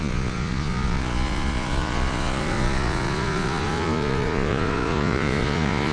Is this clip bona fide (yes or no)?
no